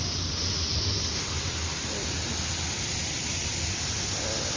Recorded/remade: recorded